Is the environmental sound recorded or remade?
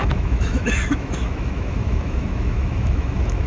remade